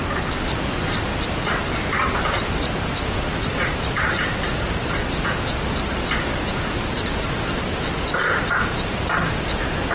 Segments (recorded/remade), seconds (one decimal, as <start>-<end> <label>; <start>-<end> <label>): 0.0-3.5 recorded; 3.5-4.4 remade; 4.4-9.9 recorded